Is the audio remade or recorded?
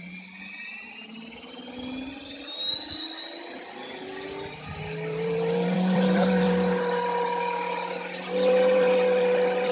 remade